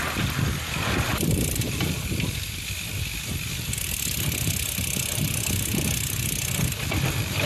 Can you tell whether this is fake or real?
real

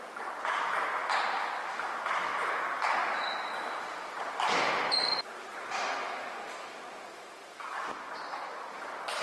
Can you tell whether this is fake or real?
real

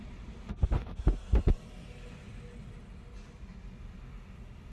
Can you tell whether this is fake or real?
real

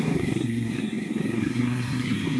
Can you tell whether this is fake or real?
fake